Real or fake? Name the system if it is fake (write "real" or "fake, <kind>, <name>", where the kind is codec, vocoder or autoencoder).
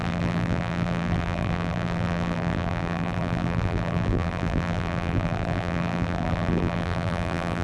fake, vocoder, BigVGAN v2